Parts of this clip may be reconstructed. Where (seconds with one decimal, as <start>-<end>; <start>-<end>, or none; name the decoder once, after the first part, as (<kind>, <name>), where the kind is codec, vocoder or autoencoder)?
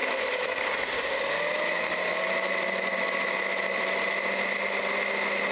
0.0-1.2 (codec, DAC)